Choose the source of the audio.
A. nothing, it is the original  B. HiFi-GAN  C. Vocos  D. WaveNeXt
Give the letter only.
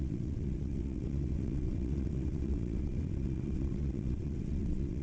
D